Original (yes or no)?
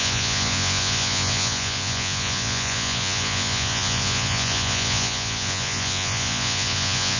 no